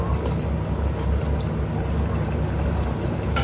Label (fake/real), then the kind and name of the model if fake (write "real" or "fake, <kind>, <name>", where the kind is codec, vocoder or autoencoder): real